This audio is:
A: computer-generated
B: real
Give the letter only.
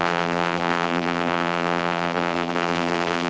A